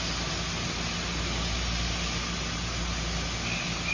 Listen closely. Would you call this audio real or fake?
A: real